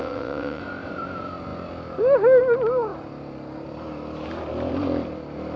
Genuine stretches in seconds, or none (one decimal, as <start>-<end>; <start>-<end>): 0.6-5.6